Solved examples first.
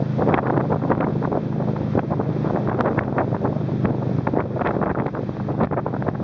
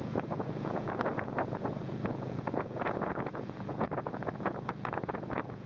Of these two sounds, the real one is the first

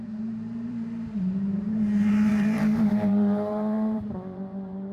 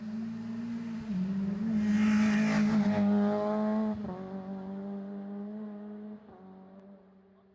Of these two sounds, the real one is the second